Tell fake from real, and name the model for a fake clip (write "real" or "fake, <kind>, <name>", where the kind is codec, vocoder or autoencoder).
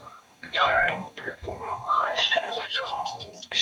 fake, codec, DAC